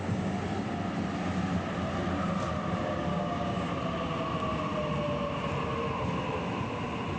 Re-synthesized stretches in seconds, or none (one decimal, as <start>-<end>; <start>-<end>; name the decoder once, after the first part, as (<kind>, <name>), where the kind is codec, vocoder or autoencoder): 3.1-3.7 (codec, DAC)

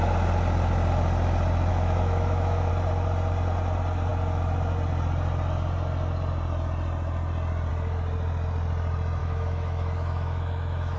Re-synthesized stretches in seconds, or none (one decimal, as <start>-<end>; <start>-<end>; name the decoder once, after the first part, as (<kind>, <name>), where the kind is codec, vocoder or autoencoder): 1.7-2.7 (autoencoder, DAC-VAE); 9.2-11.0

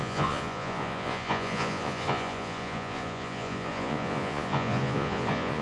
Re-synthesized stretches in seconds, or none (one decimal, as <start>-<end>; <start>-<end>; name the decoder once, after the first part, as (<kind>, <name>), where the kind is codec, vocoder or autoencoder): 0.0-5.6 (vocoder, Vocos)

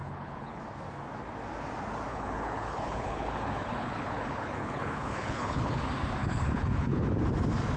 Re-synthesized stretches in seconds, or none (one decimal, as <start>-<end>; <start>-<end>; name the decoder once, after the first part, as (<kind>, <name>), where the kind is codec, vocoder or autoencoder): 0.0-0.6 (codec, HILCodec); 2.1-5.8; 6.2-7.1